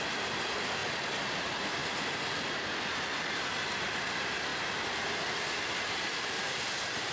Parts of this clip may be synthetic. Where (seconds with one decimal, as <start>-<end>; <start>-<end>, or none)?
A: 0.0-0.8; 1.4-4.5; 5.9-7.1